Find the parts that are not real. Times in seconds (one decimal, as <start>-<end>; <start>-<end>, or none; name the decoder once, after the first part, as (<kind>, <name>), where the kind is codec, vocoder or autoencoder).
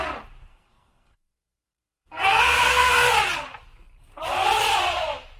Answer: 0.5-2.9 (codec, SNAC)